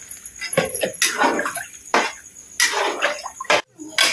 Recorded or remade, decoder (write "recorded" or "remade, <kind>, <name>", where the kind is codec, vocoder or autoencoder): recorded